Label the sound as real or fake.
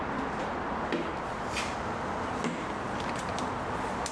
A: real